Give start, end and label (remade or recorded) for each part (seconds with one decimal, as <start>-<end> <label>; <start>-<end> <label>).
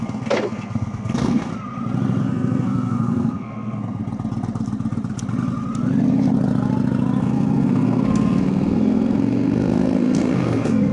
0.0-1.5 remade; 1.5-2.2 recorded; 2.2-4.0 remade; 4.0-7.2 recorded; 7.2-10.9 remade